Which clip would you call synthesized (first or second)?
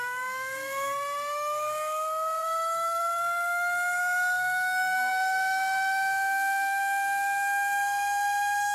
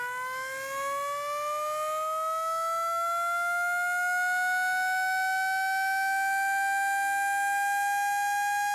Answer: first